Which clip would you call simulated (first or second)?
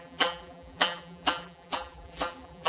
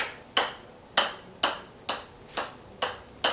first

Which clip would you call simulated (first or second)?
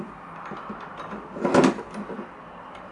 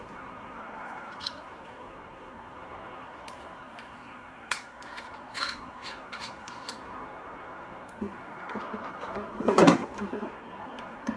second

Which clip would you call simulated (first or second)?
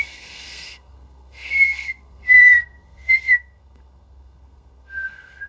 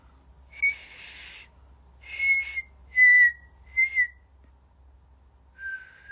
first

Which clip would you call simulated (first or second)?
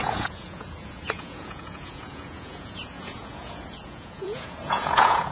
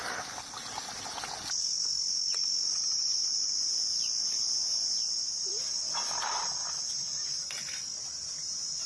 first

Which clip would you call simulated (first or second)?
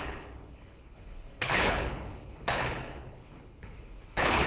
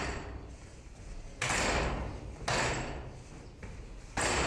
first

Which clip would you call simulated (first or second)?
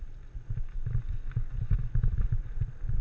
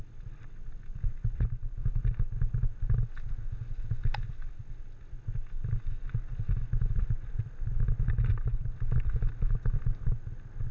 first